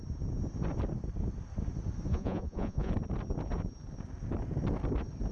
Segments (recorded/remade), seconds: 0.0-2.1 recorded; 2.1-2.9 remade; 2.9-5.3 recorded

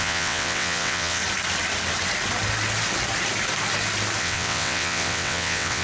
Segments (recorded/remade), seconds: 0.0-1.2 remade; 1.2-4.2 recorded; 4.2-5.8 remade

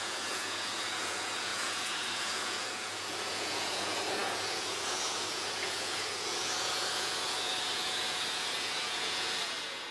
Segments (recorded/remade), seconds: 0.0-9.9 remade

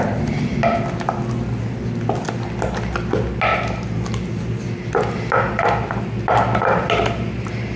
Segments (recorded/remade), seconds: 0.0-7.8 recorded

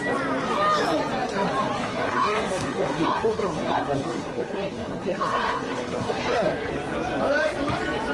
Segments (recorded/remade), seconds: 0.0-1.8 recorded; 1.8-6.7 remade; 6.7-8.1 recorded

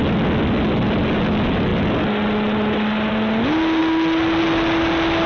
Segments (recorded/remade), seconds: 0.0-5.3 recorded

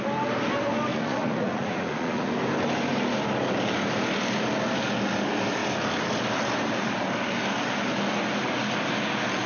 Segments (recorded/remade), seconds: 0.0-0.9 recorded; 0.9-2.3 remade; 2.3-9.5 recorded

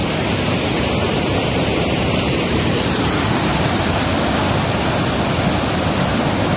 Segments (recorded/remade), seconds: 0.0-4.0 remade; 4.0-6.6 recorded